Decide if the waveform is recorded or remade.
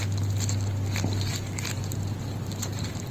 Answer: remade